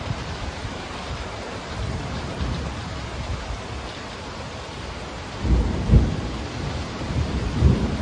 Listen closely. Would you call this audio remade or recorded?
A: remade